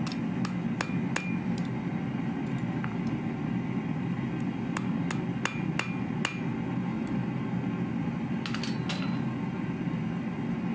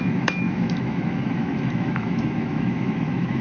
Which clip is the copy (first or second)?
second